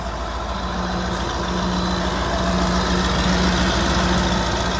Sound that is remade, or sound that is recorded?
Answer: recorded